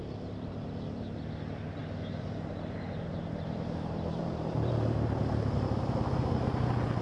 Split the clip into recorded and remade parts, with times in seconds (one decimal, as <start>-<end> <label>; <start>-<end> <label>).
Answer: 0.0-1.8 recorded; 1.8-4.7 remade; 4.7-7.0 recorded